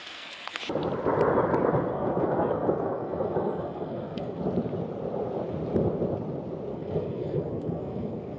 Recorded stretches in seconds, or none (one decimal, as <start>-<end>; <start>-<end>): 0.6-1.9; 4.4-6.7